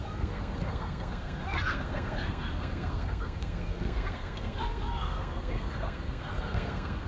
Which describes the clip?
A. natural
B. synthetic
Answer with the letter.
B